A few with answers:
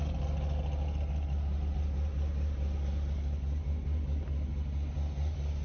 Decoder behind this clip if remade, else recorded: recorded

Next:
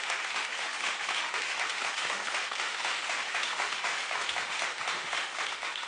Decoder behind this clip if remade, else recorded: remade, autoencoder, DAC-VAE